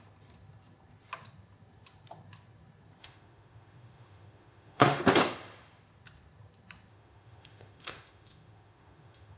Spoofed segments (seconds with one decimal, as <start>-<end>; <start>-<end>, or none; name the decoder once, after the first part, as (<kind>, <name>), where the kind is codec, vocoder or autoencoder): 3.0-5.0 (autoencoder, DAC-VAE); 6.9-9.4